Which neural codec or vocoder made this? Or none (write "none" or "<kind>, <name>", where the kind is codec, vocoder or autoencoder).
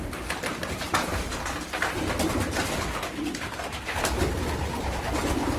none